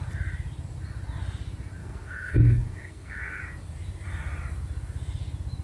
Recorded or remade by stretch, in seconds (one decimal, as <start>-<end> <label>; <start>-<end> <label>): 0.0-1.8 recorded; 1.8-3.4 remade; 3.4-5.6 recorded